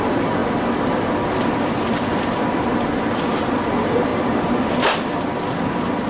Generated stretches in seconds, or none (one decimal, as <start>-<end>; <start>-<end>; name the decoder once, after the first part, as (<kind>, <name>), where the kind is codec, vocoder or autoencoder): 0.4-0.9 (vocoder, BigVGAN v2); 1.9-2.9